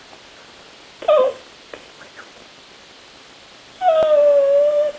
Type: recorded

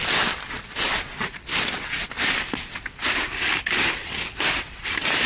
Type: recorded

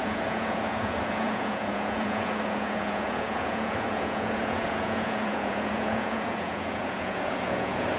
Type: remade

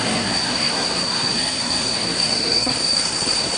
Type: remade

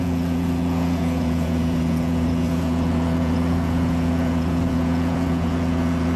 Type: remade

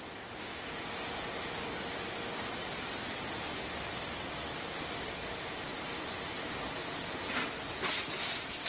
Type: recorded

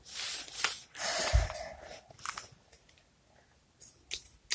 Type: recorded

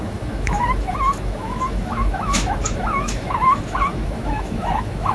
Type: remade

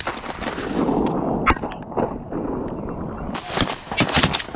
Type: recorded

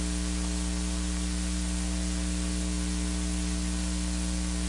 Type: recorded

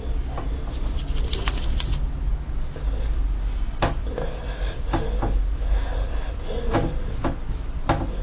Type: recorded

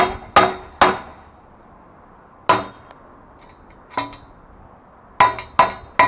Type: recorded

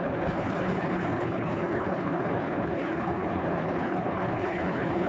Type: remade